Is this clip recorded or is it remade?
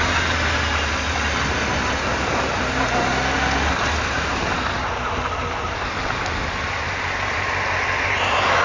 recorded